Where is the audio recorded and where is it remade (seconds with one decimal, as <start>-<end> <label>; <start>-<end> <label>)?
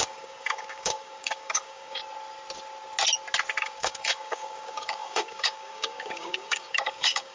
0.0-2.0 remade; 2.0-3.6 recorded; 3.6-7.3 remade